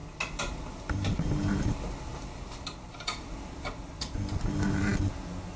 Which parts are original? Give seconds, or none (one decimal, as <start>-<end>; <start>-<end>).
0.0-5.6